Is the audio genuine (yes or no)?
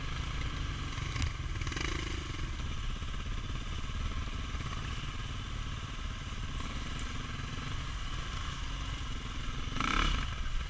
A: yes